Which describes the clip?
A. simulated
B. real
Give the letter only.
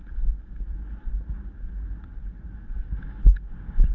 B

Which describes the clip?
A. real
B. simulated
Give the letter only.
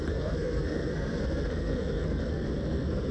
B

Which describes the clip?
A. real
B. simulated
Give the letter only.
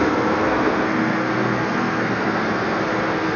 B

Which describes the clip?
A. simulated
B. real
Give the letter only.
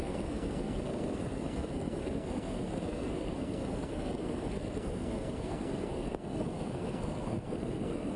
A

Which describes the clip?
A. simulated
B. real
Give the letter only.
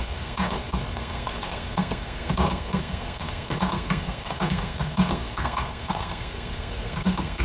A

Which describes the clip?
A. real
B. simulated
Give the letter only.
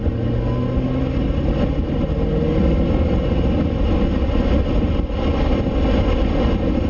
A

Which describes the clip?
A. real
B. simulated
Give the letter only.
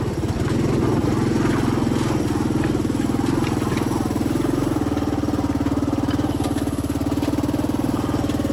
A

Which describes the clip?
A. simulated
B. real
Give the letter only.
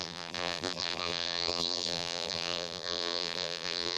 A